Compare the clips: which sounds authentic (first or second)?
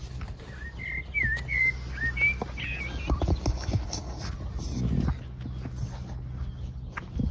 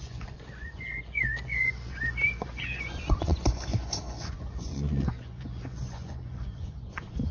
first